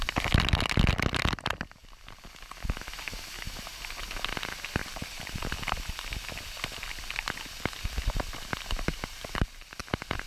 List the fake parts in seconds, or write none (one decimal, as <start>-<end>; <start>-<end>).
4.8-5.5; 8.9-9.8